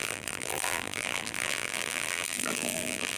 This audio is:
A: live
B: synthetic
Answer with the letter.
B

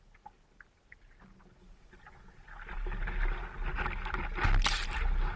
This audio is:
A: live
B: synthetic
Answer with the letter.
A